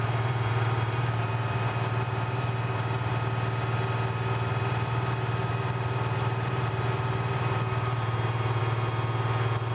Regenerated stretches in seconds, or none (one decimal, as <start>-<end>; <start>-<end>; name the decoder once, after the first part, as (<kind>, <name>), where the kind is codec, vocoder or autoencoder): 0.0-3.1 (vocoder, BigVGAN v2); 4.6-8.6